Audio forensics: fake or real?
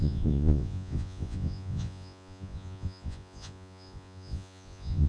fake